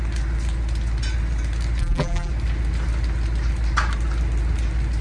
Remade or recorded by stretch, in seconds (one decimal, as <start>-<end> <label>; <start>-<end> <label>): 0.0-1.8 recorded; 1.8-2.3 remade; 2.3-5.0 recorded